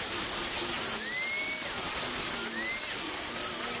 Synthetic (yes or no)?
no